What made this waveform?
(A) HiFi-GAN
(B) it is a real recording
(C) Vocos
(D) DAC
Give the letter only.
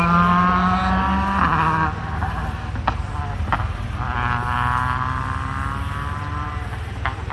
B